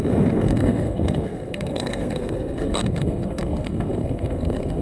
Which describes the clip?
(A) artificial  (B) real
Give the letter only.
A